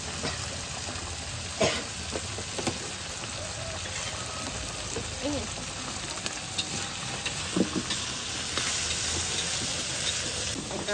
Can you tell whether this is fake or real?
real